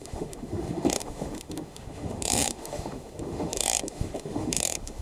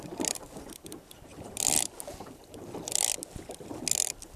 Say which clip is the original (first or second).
second